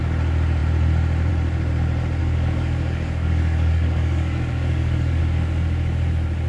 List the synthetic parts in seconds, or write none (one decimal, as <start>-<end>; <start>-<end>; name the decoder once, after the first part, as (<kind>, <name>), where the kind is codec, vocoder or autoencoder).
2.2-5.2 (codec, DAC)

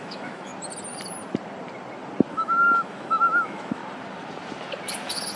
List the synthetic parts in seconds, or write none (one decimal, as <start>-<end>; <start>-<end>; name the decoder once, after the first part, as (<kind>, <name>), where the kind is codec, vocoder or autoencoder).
0.0-0.5 (autoencoder, DAC-VAE); 2.3-3.8

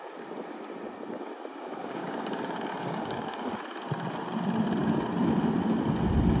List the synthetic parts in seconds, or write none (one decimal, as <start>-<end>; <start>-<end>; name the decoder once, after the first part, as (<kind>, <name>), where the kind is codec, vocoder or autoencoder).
1.5-3.5 (codec, DAC)

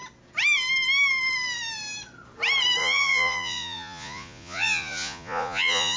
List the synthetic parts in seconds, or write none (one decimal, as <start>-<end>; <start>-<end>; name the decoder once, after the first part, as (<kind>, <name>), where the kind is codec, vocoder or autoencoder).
2.8-6.0 (vocoder, Vocos)

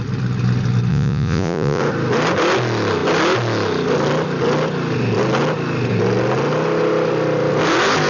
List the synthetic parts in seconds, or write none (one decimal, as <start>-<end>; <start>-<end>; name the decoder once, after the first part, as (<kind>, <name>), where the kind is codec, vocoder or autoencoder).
0.9-1.8 (vocoder, Vocos)

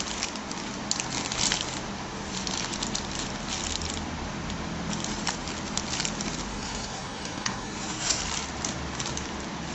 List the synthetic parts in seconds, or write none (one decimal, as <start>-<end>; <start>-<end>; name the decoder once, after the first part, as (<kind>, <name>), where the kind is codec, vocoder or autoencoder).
6.5-8.2 (codec, SNAC)

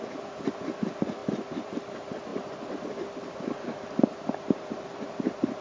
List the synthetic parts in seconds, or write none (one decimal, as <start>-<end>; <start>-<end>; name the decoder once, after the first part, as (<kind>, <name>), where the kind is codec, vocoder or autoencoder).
1.2-1.8 (vocoder, BigVGAN v2); 2.3-2.8